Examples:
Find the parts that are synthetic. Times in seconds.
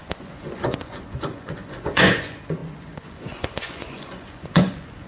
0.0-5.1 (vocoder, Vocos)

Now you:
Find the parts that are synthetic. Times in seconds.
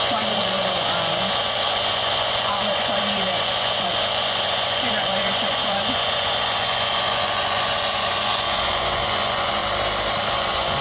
0.0-9.6 (vocoder, Vocos); 10.3-10.8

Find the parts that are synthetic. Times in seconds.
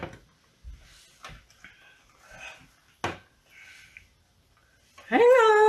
none